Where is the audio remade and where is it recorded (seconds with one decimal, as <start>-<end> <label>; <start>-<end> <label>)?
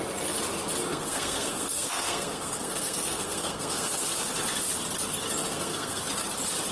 0.0-0.9 recorded; 0.9-4.0 remade; 4.0-5.5 recorded; 5.5-6.0 remade; 6.0-6.7 recorded